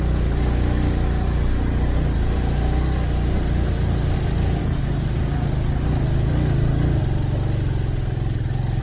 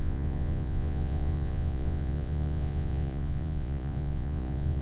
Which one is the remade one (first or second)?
second